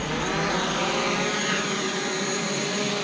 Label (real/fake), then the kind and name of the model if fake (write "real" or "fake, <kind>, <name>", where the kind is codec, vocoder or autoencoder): real